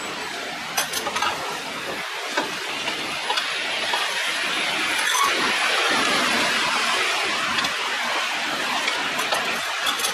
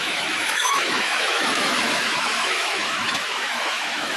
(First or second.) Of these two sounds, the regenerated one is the second